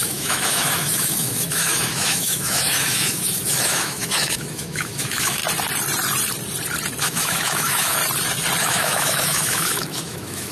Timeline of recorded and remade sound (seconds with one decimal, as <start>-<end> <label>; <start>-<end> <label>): 0.0-5.4 remade; 5.4-7.0 recorded; 7.0-8.0 remade; 8.0-8.6 recorded; 8.6-10.5 remade